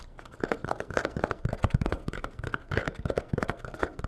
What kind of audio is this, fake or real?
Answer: fake